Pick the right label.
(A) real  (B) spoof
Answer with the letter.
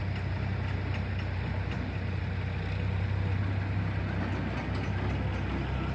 A